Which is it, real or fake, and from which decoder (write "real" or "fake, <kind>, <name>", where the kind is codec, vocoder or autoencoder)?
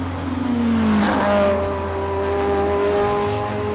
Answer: real